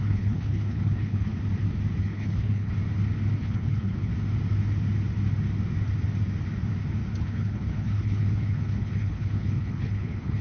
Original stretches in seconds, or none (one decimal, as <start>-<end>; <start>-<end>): 1.3-2.0; 2.7-3.4; 4.1-7.2

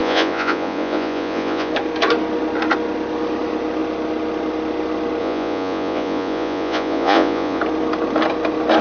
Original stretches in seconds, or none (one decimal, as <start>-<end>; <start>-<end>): 1.7-5.2; 7.6-8.8

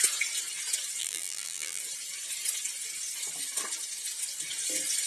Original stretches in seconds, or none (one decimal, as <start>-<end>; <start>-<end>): 0.0-1.0; 1.8-5.1